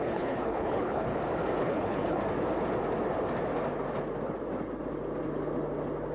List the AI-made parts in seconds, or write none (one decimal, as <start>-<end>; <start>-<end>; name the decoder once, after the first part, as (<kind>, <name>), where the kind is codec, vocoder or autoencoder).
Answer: 0.0-1.1 (codec, HILCodec); 1.6-2.2